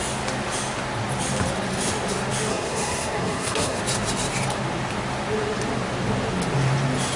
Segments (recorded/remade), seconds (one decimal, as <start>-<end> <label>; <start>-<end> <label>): 0.0-2.5 recorded; 2.5-3.8 remade; 3.8-7.2 recorded